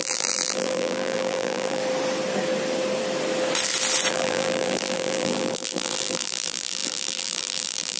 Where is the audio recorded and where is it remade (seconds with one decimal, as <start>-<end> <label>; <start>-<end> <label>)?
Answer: 0.0-1.8 remade; 1.8-4.1 recorded; 4.1-8.0 remade